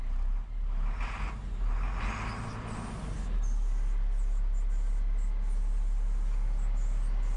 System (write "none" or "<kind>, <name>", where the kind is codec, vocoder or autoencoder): none